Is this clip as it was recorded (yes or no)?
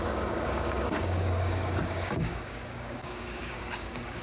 no